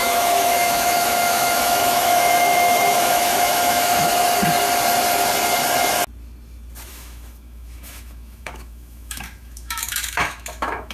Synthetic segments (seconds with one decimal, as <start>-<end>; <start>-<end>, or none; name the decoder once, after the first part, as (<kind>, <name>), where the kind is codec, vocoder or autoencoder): 0.0-4.1 (autoencoder, DAC-VAE); 6.9-10.9